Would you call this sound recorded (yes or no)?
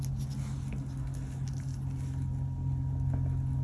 yes